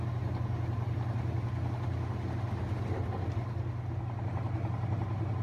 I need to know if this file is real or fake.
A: real